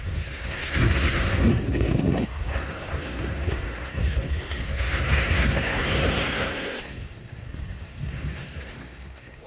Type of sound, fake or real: fake